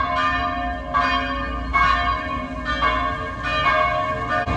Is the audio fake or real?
real